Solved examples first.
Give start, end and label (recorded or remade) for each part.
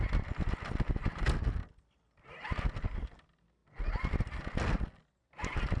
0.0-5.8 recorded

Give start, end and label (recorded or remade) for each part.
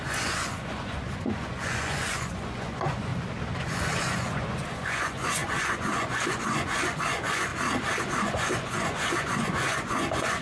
0.0-3.1 remade; 3.1-3.6 recorded; 3.6-7.5 remade; 7.5-8.0 recorded; 8.0-10.4 remade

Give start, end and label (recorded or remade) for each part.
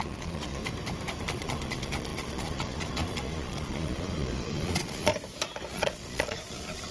0.0-0.6 remade; 0.6-1.2 recorded; 1.2-5.1 remade; 5.1-5.7 recorded; 5.7-6.9 remade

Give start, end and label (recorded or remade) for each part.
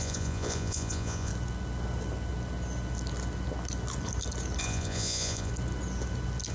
0.0-1.3 remade; 1.3-4.6 recorded; 4.6-5.5 remade; 5.5-6.5 recorded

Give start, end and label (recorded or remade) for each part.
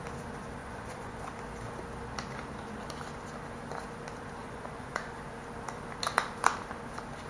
0.0-0.6 recorded; 0.6-1.2 remade; 1.2-4.4 recorded; 4.4-5.2 remade; 5.2-7.3 recorded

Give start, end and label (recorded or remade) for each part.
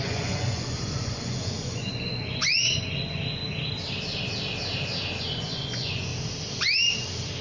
0.0-3.4 remade; 3.4-5.2 recorded; 5.2-6.1 remade; 6.1-7.4 recorded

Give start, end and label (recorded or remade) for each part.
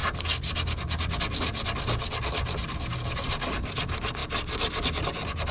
0.0-5.5 recorded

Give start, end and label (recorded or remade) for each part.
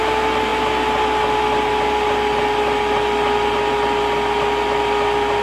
0.0-5.4 recorded